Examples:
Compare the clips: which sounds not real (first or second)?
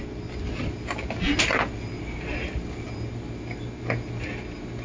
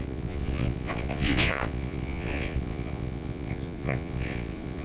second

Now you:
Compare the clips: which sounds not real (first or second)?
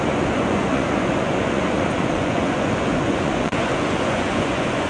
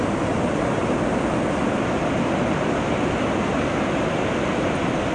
first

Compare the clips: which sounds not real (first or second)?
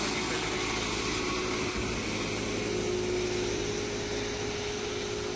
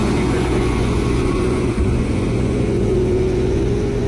second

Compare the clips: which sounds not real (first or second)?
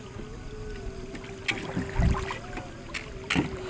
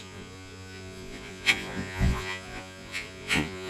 second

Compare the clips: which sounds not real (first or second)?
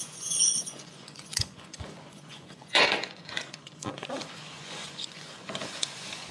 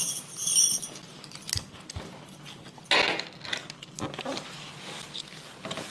first